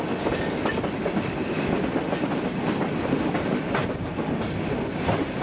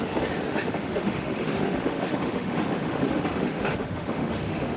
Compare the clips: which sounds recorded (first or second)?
first